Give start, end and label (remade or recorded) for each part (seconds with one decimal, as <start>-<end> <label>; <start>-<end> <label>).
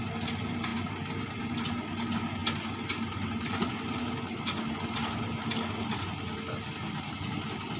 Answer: 0.0-7.8 recorded